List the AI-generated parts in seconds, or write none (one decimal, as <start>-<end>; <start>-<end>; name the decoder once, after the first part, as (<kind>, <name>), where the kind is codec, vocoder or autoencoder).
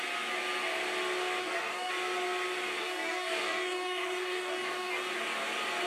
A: 1.4-1.9 (codec, DAC); 2.8-5.1